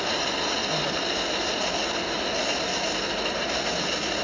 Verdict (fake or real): real